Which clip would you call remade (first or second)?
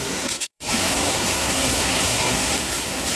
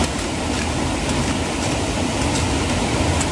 first